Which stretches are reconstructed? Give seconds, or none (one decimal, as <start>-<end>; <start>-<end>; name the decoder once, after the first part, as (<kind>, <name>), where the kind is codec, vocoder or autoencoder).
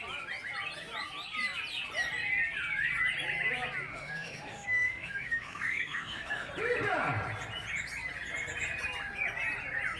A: 3.9-6.5 (autoencoder, DAC-VAE)